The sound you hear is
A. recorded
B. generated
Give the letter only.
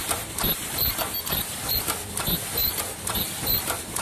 A